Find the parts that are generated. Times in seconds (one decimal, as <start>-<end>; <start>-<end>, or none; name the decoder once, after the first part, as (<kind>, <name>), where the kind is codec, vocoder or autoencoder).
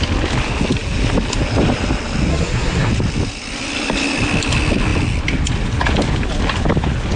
2.3-2.9 (codec, SNAC)